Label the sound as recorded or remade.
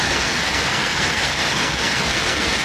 remade